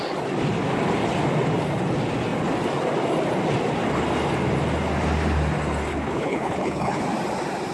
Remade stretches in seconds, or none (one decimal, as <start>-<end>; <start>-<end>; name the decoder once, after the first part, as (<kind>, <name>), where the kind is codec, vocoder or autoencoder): 5.9-7.0 (codec, HILCodec)